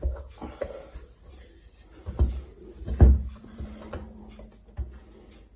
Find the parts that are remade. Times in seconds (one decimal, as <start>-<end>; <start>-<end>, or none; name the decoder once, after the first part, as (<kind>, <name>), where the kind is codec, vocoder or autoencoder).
3.4-4.2 (vocoder, Vocos)